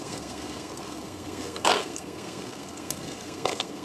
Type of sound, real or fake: fake